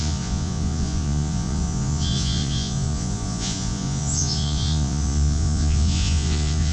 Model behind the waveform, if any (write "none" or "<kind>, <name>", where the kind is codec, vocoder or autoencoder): vocoder, Vocos